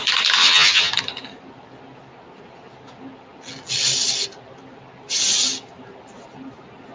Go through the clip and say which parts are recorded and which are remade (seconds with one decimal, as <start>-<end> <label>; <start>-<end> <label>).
0.0-0.4 recorded; 0.4-0.9 remade; 0.9-6.9 recorded

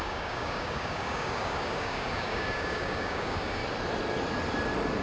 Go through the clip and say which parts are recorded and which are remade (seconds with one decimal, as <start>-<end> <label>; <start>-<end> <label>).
0.0-3.6 remade; 3.6-5.0 recorded

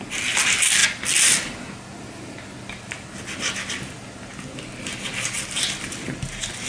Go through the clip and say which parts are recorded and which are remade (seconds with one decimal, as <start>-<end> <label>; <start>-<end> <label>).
0.0-6.7 recorded

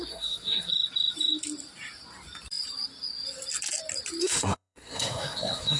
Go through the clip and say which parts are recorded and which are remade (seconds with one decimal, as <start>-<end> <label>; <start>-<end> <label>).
0.0-0.7 remade; 0.7-4.2 recorded; 4.2-5.8 remade

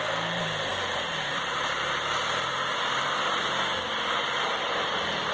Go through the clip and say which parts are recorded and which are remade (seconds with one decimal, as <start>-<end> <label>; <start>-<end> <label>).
0.0-5.3 remade